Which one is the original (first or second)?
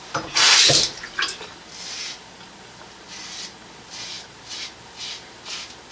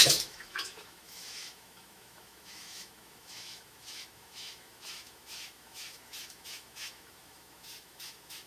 first